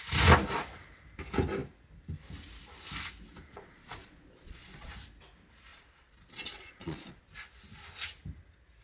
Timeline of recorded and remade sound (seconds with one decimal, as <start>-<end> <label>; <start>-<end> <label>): 0.0-3.5 recorded; 3.5-4.9 remade; 4.9-5.7 recorded; 5.7-7.2 remade; 7.2-8.8 recorded